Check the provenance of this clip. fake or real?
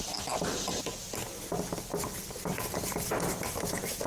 real